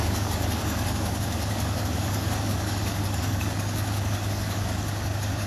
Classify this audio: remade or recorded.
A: remade